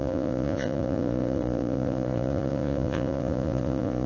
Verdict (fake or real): fake